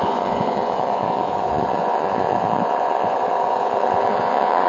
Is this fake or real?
fake